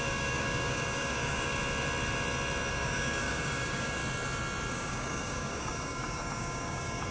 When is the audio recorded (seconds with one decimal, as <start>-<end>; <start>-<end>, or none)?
1.6-2.7; 4.0-4.7